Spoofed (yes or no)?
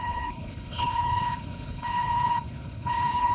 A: yes